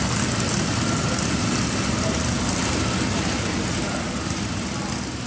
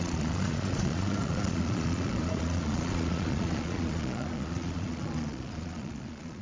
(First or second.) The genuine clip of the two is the first